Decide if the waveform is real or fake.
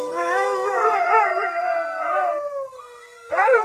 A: fake